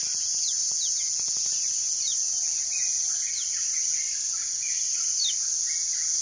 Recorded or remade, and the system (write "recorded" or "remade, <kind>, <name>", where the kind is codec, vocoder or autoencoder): recorded